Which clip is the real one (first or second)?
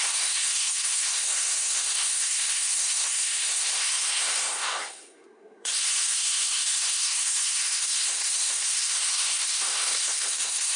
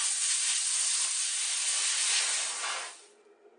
second